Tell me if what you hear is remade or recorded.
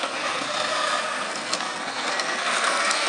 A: remade